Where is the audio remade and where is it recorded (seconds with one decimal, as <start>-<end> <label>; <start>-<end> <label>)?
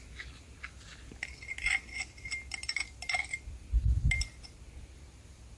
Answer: 0.0-5.6 recorded